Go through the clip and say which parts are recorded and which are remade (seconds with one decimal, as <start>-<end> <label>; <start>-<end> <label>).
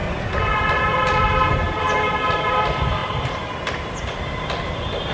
0.0-2.5 remade; 2.5-5.1 recorded